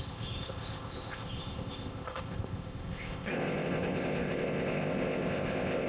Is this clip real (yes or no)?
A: no